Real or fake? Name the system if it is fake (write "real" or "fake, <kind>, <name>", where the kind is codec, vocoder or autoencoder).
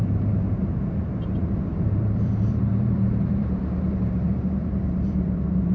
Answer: fake, vocoder, BigVGAN v2